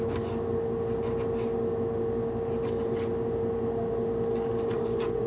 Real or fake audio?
real